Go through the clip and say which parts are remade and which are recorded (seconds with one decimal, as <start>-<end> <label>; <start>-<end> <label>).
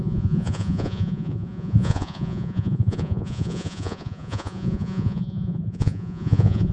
0.0-6.7 remade